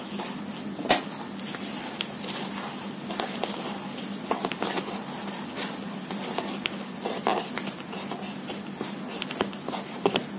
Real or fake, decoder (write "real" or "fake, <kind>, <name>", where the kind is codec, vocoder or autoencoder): real